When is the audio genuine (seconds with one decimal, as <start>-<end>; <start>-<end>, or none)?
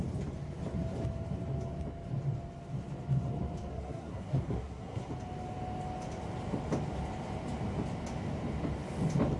0.0-3.7; 5.1-9.4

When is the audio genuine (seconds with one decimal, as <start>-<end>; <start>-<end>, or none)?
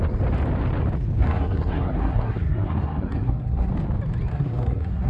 0.0-1.2; 3.7-4.3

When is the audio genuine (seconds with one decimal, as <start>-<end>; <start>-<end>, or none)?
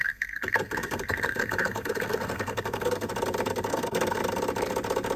3.1-3.7; 4.2-5.2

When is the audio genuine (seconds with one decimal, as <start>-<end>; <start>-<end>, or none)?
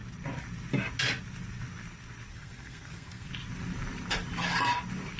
0.0-2.3; 3.3-5.2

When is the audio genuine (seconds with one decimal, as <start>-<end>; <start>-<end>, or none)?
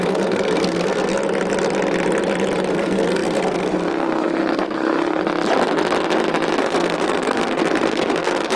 1.1-2.7; 5.2-6.6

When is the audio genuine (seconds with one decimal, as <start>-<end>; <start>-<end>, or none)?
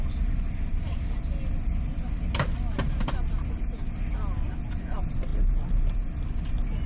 0.0-6.9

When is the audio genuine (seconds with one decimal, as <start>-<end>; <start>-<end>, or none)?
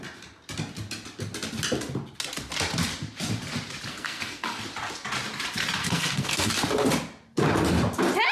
0.0-3.9; 4.6-5.8; 6.5-8.3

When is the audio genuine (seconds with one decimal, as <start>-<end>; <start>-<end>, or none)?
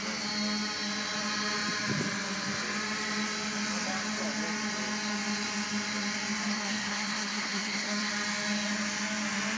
0.0-6.5; 8.1-9.6